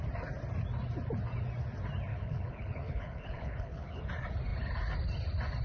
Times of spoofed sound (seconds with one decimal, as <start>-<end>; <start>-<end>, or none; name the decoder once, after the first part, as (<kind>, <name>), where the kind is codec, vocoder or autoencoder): 2.1-4.0 (codec, HILCodec)